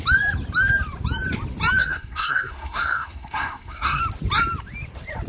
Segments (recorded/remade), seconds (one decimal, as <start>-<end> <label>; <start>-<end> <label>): 0.0-1.8 recorded; 1.8-4.0 remade; 4.0-5.3 recorded